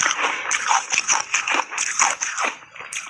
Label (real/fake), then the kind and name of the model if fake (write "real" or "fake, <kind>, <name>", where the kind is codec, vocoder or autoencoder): real